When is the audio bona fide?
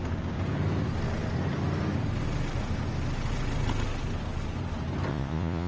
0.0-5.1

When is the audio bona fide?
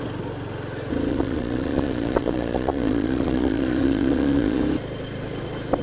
0.0-1.1; 4.6-5.8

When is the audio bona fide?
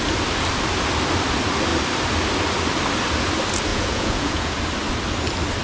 0.0-3.7; 4.6-5.6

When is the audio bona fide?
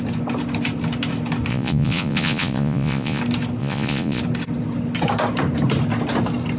0.0-1.5; 3.2-3.6; 4.2-6.6